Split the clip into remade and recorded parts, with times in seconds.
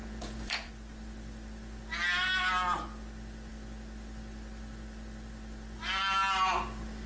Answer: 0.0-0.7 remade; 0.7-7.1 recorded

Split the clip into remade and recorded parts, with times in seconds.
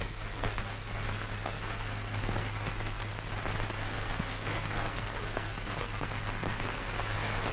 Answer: 0.0-3.1 remade; 3.1-3.7 recorded; 3.7-7.5 remade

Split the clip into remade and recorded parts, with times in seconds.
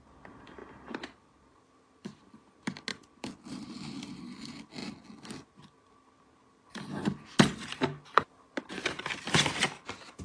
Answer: 0.0-2.9 recorded; 2.9-4.2 remade; 4.2-10.2 recorded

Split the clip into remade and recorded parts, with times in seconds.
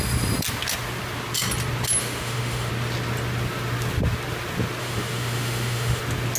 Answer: 0.0-2.0 recorded; 2.0-2.7 remade; 2.7-4.8 recorded; 4.8-6.0 remade; 6.0-6.4 recorded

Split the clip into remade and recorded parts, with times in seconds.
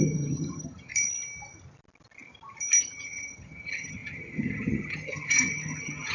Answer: 0.0-0.9 remade; 0.9-2.8 recorded; 2.8-6.1 remade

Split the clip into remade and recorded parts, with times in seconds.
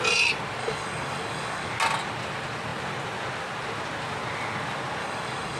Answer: 0.0-0.6 recorded; 0.6-1.7 remade; 1.7-5.0 recorded; 5.0-5.6 remade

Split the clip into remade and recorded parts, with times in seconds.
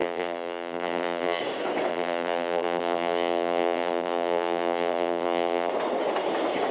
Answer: 0.0-1.4 remade; 1.4-1.9 recorded; 1.9-5.7 remade; 5.7-6.7 recorded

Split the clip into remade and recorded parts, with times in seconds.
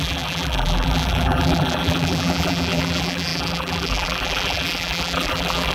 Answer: 0.0-5.7 remade